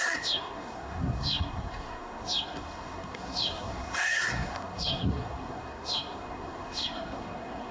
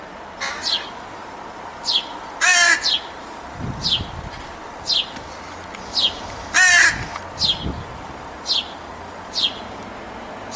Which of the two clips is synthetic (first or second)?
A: first